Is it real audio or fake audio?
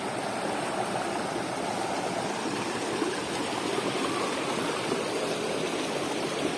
fake